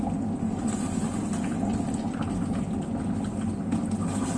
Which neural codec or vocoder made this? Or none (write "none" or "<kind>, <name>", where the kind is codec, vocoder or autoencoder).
none